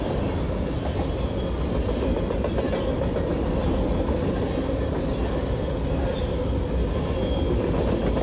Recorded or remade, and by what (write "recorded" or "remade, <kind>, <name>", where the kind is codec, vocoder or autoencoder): recorded